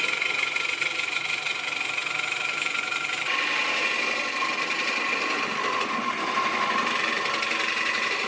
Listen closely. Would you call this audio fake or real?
real